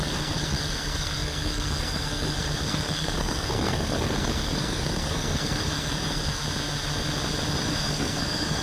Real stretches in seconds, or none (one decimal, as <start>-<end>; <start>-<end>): 6.4-7.7